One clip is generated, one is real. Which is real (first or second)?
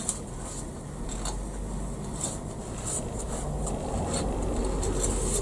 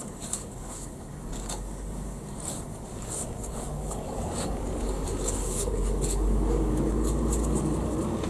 first